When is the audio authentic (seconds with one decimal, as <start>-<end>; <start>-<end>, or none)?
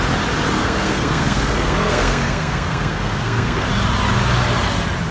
0.0-0.6; 3.7-5.1